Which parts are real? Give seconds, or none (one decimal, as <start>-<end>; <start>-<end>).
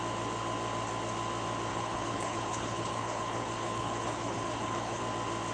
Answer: 0.0-1.7; 5.0-5.5